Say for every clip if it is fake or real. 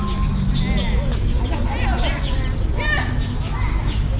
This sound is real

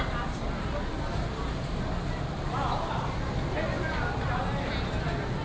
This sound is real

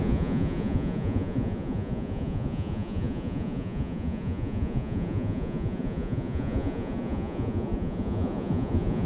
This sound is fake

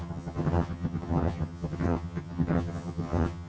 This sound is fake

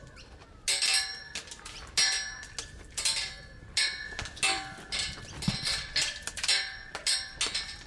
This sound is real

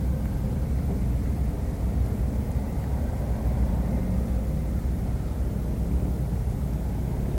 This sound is real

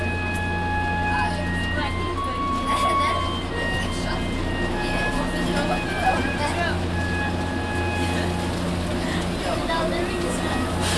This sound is real